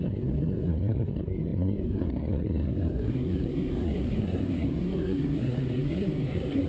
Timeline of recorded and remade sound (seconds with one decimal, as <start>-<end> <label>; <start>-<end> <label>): 0.0-6.7 remade